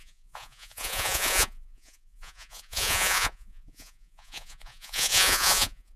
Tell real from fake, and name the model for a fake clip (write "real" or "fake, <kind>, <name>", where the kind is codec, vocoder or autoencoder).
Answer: fake, vocoder, Vocos